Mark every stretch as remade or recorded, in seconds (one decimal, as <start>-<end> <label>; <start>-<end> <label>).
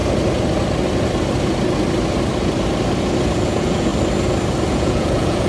0.0-3.3 recorded; 3.3-3.9 remade; 3.9-4.7 recorded; 4.7-5.5 remade